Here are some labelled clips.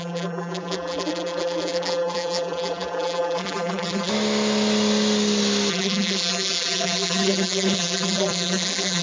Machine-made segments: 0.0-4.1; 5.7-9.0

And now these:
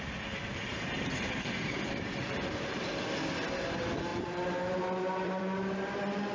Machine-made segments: 0.7-2.9; 4.1-5.4

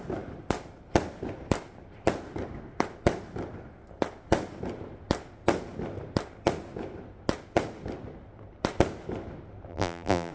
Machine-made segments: 9.7-10.3

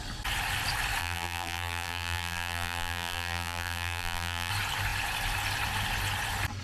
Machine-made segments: 1.0-4.5

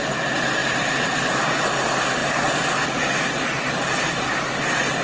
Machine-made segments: 0.6-1.7; 2.2-4.6

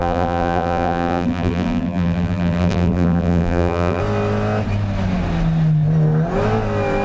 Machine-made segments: 0.0-4.0

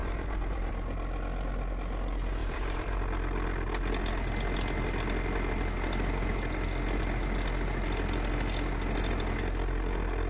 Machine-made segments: 0.0-0.7; 2.4-3.0

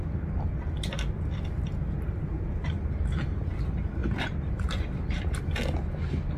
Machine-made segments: 2.3-3.5; 4.0-5.4